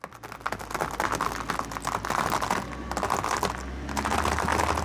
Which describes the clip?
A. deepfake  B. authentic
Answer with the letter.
B